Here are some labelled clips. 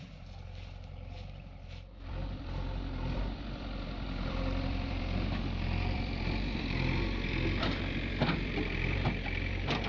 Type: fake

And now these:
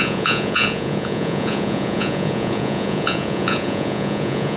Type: fake